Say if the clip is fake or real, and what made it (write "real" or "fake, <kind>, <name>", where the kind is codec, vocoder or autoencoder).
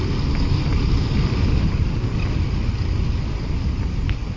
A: real